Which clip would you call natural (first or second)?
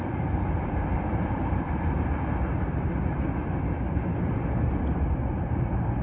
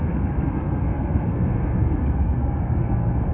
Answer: first